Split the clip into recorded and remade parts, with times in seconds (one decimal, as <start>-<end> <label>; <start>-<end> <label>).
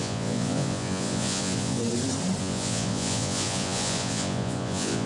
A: 0.0-1.8 remade; 1.8-2.4 recorded; 2.4-5.1 remade